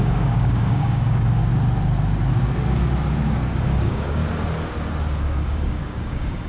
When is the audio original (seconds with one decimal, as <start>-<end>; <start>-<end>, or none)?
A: 1.4-3.6; 4.2-5.2